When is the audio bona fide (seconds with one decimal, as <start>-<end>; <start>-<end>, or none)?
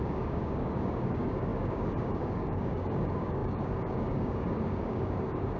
none